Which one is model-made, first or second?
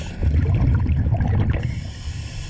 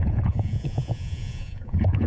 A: second